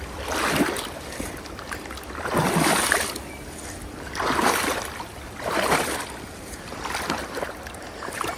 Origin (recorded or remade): recorded